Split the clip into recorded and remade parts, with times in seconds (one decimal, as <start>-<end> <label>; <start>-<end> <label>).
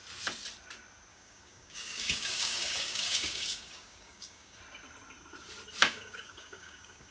0.0-1.1 recorded; 1.1-4.6 remade; 4.6-5.8 recorded; 5.8-7.1 remade